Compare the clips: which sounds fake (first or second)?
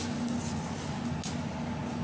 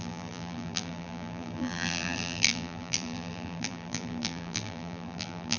second